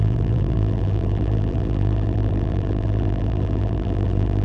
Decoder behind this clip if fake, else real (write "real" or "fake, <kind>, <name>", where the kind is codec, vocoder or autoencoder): fake, vocoder, BigVGAN v2